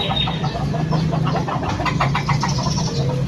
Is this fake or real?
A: real